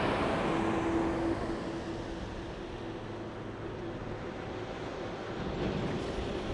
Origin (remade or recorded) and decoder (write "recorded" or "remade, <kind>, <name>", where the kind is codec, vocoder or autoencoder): recorded